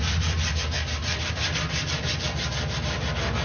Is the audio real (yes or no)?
yes